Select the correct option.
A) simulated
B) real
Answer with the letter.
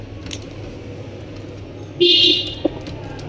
B